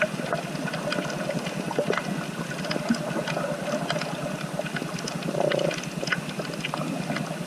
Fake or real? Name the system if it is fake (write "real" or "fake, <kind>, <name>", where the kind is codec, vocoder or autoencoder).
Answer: real